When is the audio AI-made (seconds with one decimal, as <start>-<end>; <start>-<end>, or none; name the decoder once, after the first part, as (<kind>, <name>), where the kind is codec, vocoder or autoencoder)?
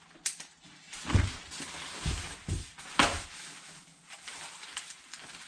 none